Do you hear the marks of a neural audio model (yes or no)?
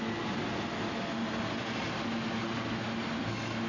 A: no